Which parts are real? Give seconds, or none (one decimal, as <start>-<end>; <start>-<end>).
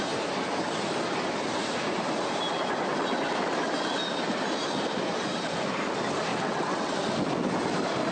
0.0-6.3; 6.9-8.1